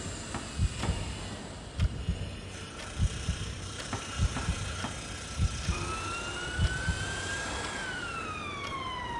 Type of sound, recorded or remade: recorded